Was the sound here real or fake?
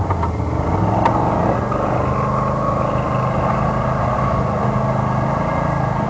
real